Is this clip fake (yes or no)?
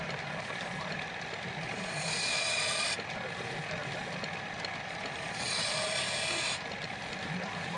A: yes